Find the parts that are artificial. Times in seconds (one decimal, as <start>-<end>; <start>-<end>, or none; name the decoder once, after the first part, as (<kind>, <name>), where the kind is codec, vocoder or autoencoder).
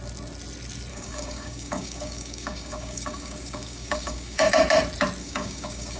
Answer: 0.9-4.5 (codec, DAC); 5.2-6.0